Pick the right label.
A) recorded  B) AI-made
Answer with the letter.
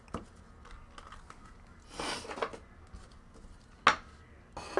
A